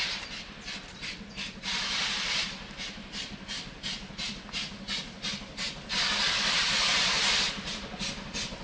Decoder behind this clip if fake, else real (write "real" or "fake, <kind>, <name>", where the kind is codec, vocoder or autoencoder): real